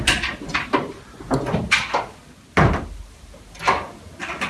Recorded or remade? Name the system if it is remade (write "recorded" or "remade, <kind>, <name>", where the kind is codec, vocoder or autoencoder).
recorded